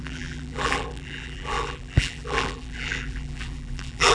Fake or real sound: fake